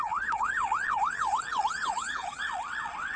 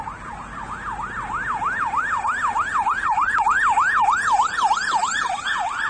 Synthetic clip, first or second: first